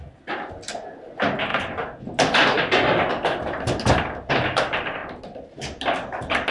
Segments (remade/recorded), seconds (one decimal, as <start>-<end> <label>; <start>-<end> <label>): 0.0-6.5 recorded